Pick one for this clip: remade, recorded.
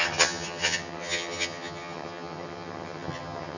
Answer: remade